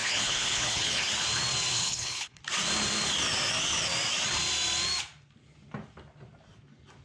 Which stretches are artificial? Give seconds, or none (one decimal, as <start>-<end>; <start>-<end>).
0.0-1.1; 1.7-2.4